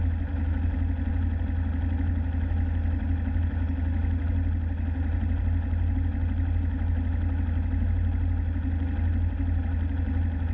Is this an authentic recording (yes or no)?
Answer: yes